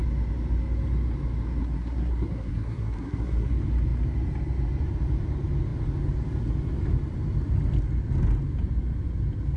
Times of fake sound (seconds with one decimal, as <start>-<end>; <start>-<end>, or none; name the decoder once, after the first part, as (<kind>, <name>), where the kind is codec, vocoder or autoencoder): 1.6-3.5 (codec, SNAC)